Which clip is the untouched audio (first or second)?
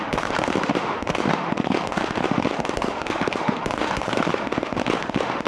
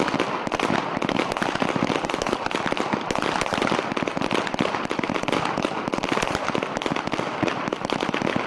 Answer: second